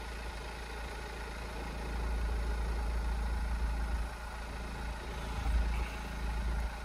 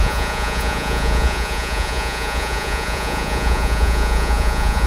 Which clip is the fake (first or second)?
second